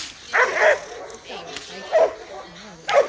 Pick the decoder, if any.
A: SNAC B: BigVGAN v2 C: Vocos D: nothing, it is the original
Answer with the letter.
D